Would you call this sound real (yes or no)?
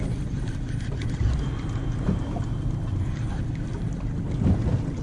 yes